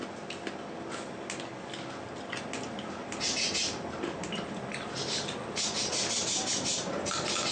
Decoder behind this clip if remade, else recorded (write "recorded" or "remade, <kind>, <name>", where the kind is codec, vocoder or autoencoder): recorded